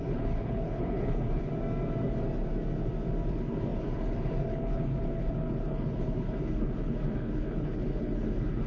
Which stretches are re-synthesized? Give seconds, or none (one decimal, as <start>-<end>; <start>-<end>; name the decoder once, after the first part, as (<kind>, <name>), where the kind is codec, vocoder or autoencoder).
0.0-1.5 (codec, HILCodec); 3.3-8.7